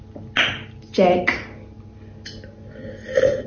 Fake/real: real